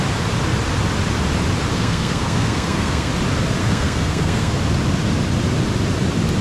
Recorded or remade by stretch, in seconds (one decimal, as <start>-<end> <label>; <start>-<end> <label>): 0.0-1.7 recorded; 1.7-3.1 remade; 3.1-3.6 recorded; 3.6-4.5 remade; 4.5-6.4 recorded

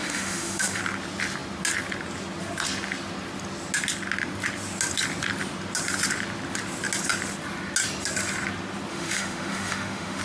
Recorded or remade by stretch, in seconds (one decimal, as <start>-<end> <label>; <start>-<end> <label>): 0.0-0.8 remade; 0.8-8.9 recorded; 8.9-10.2 remade

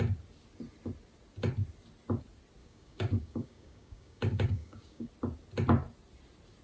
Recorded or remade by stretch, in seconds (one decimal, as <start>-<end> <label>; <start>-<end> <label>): 0.0-2.6 recorded; 2.6-5.1 remade; 5.1-6.6 recorded

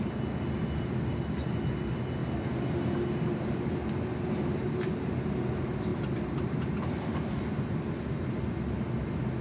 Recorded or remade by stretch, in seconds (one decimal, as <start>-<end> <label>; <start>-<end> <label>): 0.0-9.4 recorded

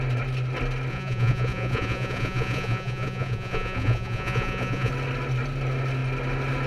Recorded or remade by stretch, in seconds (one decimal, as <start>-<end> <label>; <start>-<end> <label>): 0.0-0.9 recorded; 0.9-4.9 remade; 4.9-6.7 recorded

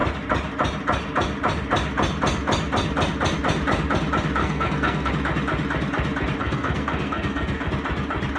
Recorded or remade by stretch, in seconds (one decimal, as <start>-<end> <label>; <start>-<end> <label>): 0.0-4.4 recorded; 4.4-5.1 remade; 5.1-6.4 recorded; 6.4-7.7 remade; 7.7-8.4 recorded

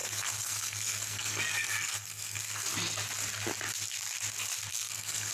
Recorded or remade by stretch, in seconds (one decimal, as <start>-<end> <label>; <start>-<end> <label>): 0.0-2.7 remade; 2.7-4.7 recorded; 4.7-5.3 remade